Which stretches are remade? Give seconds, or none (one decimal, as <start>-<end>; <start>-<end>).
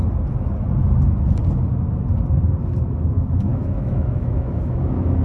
3.1-5.2